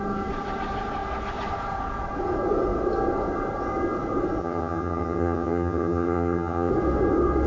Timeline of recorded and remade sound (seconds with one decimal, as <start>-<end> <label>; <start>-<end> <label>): 0.0-4.4 recorded; 4.4-6.7 remade; 6.7-7.5 recorded